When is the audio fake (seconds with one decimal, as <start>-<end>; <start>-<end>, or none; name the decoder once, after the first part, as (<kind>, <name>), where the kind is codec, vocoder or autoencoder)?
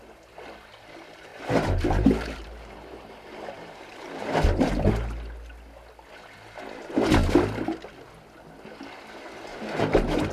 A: 1.3-4.9 (vocoder, BigVGAN v2); 9.5-10.3